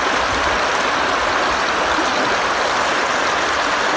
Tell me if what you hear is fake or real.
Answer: real